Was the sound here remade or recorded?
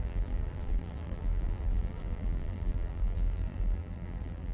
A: remade